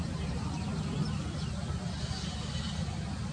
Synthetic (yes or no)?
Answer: no